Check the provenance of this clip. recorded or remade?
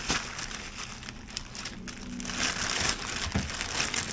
recorded